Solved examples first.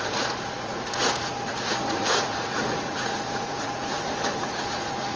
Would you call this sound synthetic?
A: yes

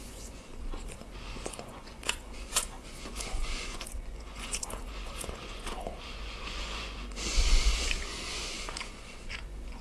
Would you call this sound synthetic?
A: yes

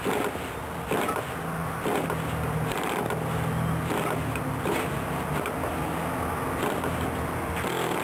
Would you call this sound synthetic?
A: no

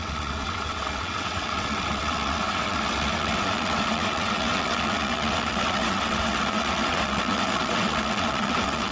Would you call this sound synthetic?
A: yes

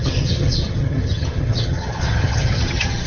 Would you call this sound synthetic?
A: yes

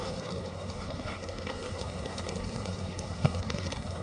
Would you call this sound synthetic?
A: yes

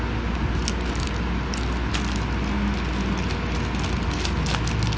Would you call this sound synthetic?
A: no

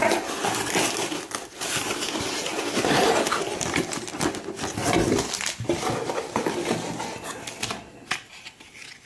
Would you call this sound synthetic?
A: no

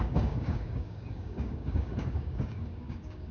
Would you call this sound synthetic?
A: yes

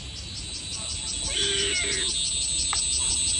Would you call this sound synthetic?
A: no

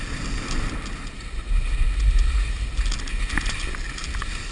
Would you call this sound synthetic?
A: no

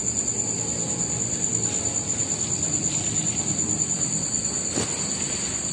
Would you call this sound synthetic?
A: no